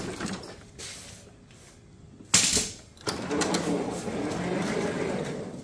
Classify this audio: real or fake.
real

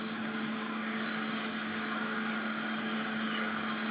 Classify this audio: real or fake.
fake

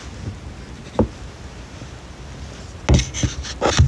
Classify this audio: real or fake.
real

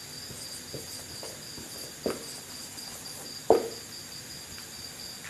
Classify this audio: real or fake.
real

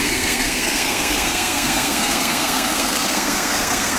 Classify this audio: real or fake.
fake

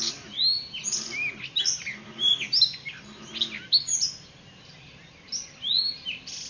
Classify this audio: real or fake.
real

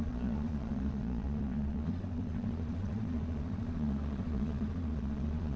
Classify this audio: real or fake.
fake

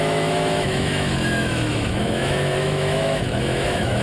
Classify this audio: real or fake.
fake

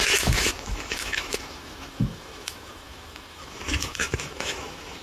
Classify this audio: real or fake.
fake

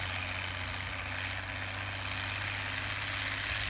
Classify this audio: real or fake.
real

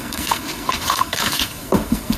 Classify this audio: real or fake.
fake